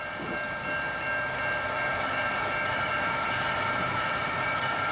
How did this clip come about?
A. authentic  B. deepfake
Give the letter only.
A